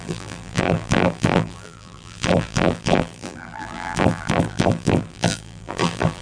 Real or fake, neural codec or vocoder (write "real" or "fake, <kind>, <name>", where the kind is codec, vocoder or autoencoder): fake, vocoder, BigVGAN v2